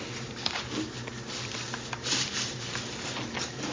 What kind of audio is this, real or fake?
real